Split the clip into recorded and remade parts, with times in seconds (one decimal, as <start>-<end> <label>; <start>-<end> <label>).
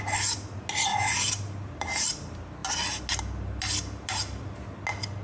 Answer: 0.0-0.9 recorded; 0.9-2.1 remade; 2.1-5.2 recorded